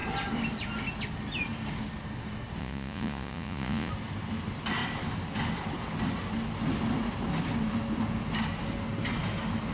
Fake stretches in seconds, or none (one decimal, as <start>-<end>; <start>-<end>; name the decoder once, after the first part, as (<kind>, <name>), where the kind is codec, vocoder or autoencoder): 2.6-3.9 (vocoder, Vocos)